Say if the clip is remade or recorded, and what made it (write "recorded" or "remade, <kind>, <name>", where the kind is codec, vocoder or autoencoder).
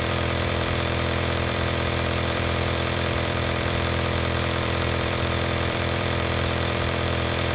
remade, vocoder, BigVGAN v2